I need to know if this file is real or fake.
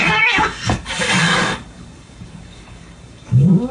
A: fake